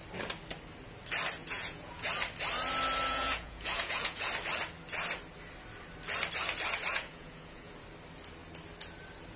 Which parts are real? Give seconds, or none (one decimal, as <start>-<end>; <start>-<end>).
0.0-1.4; 2.1-3.1; 4.3-6.9; 7.7-9.4